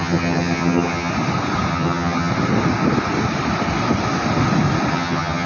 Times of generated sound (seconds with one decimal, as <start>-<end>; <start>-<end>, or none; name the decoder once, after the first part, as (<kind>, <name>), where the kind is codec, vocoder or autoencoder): 0.0-1.1 (vocoder, HiFi-GAN); 1.7-2.3; 4.9-5.5